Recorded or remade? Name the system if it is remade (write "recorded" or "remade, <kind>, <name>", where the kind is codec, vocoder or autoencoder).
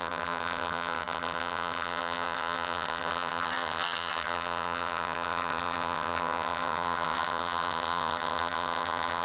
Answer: remade, vocoder, HiFi-GAN